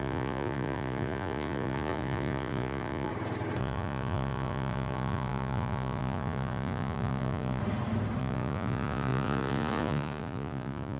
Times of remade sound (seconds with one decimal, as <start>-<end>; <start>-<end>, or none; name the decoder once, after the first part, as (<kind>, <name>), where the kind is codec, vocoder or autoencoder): 0.0-3.1 (vocoder, Vocos); 3.6-7.6; 8.2-11.0